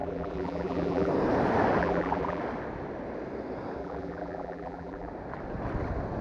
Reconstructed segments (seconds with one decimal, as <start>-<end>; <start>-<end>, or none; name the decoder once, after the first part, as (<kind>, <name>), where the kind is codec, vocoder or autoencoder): 0.0-1.1 (vocoder, BigVGAN v2); 1.8-2.4; 3.8-5.1